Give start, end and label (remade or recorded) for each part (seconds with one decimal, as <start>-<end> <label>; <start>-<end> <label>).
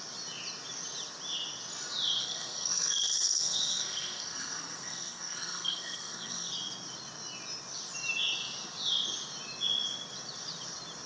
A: 0.0-2.2 recorded; 2.2-6.5 remade; 6.5-11.1 recorded